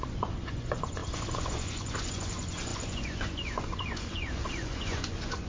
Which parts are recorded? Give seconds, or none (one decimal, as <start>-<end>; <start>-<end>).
none